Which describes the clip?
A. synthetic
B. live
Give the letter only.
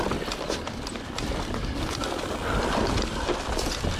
B